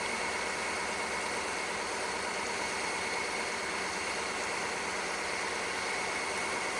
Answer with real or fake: real